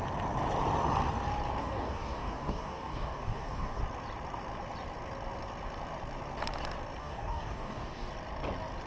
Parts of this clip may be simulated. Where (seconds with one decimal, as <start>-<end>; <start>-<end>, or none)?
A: 1.6-3.8; 7.0-8.1